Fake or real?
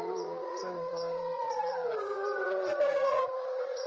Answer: fake